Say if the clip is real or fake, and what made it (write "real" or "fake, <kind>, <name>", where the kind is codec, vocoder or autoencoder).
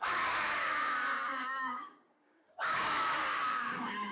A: fake, codec, DAC